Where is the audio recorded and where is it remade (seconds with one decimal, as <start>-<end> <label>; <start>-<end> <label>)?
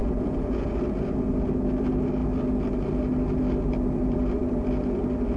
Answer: 0.0-0.7 remade; 0.7-5.4 recorded